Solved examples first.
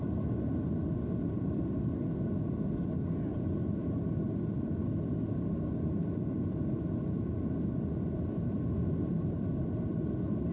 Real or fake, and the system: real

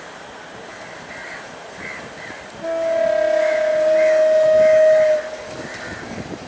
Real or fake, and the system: real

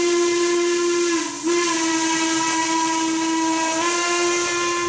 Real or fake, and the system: real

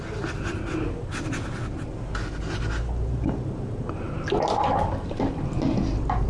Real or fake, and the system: real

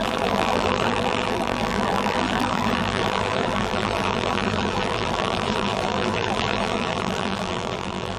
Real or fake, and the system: fake, vocoder, BigVGAN v2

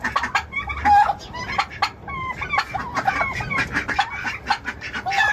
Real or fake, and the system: real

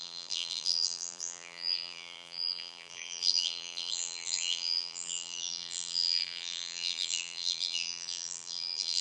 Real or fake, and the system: fake, vocoder, BigVGAN v2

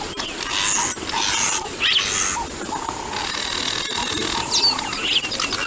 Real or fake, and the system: real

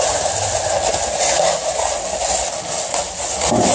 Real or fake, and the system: real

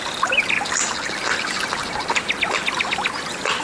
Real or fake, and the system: real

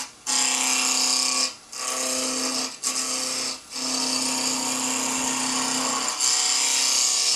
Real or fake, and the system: real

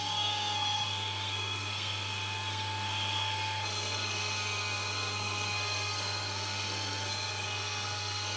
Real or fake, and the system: fake, codec, SNAC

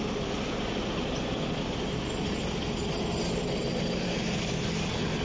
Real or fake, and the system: real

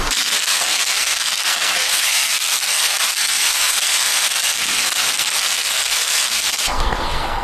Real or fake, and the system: fake, codec, SNAC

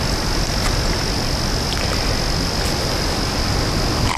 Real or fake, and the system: real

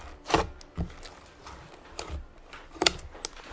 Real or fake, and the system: real